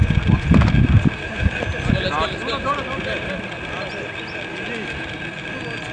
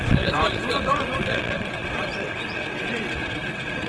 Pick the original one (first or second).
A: first